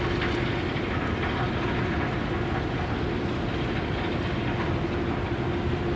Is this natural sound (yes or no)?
yes